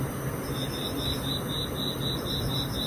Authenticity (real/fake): real